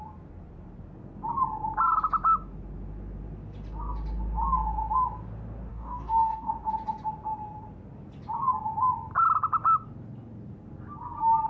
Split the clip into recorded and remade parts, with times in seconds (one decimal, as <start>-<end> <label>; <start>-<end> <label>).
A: 0.0-5.7 recorded; 5.7-6.5 remade; 6.5-11.5 recorded